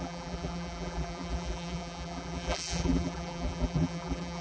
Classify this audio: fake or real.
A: fake